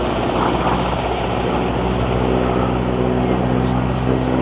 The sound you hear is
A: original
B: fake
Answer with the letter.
A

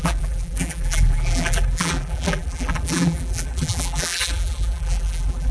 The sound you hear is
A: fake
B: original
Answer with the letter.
A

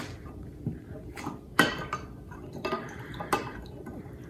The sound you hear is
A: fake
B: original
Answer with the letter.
A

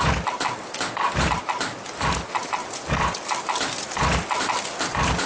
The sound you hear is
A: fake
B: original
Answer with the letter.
B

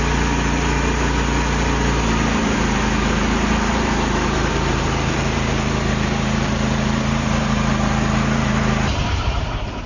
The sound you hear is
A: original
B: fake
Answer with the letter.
B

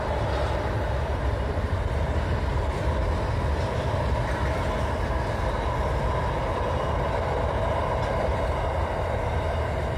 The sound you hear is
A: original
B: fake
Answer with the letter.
A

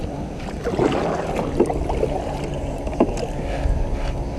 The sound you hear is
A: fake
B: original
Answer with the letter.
A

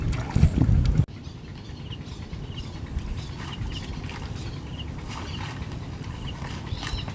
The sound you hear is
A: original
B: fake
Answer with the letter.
A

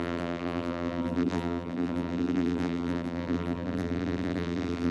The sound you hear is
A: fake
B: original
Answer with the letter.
A